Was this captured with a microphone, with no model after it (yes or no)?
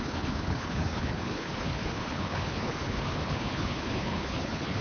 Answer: no